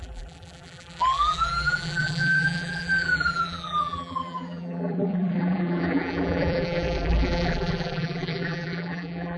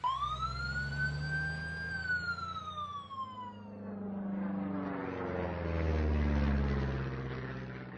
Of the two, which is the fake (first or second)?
first